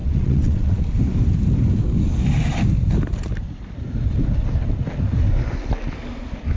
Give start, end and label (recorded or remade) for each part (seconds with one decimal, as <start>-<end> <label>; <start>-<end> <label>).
0.0-0.8 remade; 0.8-6.6 recorded